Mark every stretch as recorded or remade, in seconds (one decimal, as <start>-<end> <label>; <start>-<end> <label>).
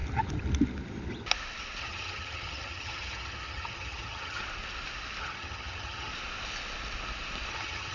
0.0-1.8 recorded; 1.8-4.4 remade; 4.4-5.2 recorded; 5.2-6.1 remade; 6.1-7.5 recorded; 7.5-7.9 remade